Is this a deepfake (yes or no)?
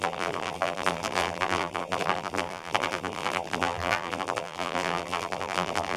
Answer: yes